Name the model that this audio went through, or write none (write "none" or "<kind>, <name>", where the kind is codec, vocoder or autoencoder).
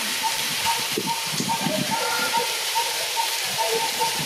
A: vocoder, BigVGAN v2